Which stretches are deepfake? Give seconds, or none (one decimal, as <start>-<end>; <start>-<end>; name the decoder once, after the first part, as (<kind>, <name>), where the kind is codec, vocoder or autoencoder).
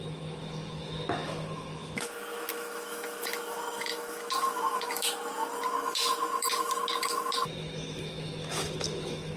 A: 0.0-9.4 (autoencoder, DAC-VAE)